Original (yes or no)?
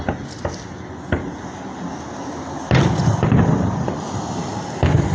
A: yes